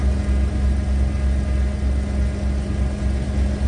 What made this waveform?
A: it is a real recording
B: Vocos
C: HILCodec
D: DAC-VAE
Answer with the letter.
A